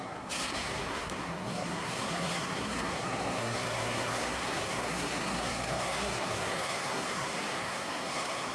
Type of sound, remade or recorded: remade